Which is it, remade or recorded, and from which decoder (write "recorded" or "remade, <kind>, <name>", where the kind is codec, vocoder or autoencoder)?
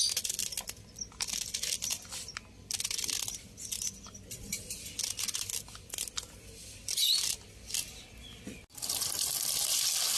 recorded